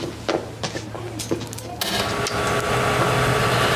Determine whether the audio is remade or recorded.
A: recorded